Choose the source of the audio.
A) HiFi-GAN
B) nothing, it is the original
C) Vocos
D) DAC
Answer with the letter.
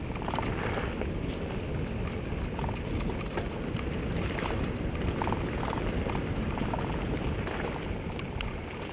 B